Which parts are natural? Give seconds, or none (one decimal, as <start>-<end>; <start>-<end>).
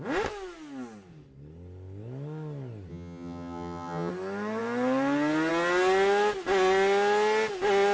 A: 0.0-2.9; 4.1-7.9